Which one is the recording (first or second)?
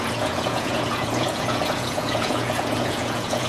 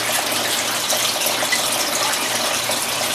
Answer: second